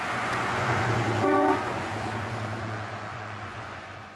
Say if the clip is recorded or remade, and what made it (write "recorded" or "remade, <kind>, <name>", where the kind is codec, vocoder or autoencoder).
remade, vocoder, Vocos